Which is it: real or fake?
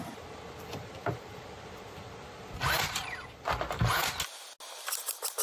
real